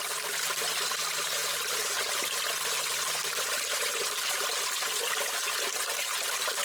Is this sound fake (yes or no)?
no